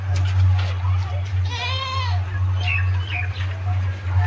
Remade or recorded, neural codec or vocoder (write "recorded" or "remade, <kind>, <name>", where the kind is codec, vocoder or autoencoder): recorded